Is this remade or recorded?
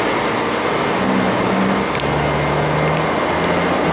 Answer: recorded